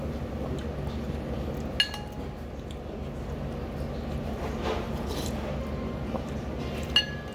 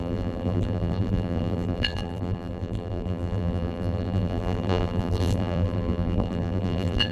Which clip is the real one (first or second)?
first